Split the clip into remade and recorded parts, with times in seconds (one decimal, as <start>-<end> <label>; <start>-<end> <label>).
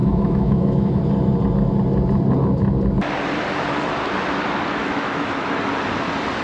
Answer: 0.0-1.0 remade; 1.0-4.8 recorded; 4.8-5.5 remade; 5.5-6.4 recorded